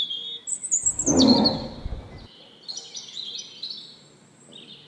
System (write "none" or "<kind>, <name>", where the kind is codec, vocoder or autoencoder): none